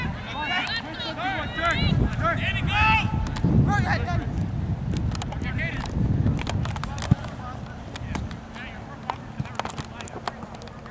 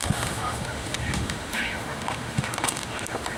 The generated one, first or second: second